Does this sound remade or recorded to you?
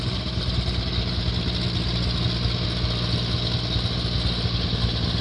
recorded